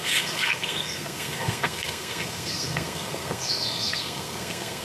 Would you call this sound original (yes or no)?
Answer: no